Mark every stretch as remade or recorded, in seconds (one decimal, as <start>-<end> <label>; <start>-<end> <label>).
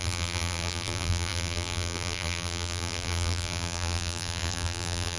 0.0-5.2 remade